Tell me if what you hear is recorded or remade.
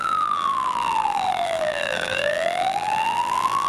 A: remade